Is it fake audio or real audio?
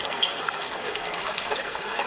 fake